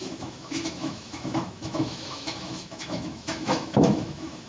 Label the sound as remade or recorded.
remade